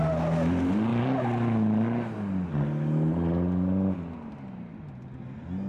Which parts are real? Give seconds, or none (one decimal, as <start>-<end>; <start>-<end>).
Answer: 0.0-5.7